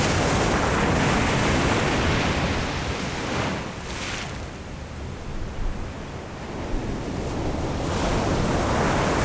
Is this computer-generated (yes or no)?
no